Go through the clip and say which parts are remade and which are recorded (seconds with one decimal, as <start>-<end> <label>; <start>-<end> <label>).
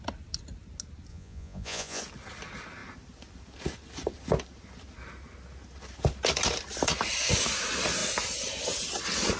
0.0-1.1 recorded; 1.1-2.0 remade; 2.0-9.4 recorded